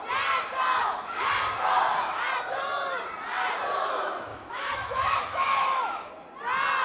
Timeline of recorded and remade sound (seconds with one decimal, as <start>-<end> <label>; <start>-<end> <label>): 0.0-0.8 recorded; 0.8-1.3 remade; 1.3-4.3 recorded; 4.3-6.1 remade; 6.1-6.8 recorded